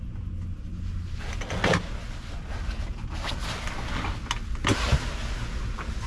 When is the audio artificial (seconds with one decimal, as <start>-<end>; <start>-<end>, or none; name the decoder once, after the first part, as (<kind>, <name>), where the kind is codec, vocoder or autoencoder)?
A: none